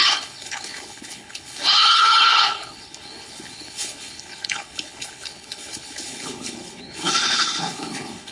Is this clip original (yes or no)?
no